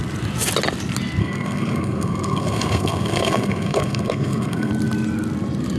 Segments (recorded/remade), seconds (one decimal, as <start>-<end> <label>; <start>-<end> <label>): 0.0-1.2 recorded; 1.2-4.7 remade; 4.7-5.8 recorded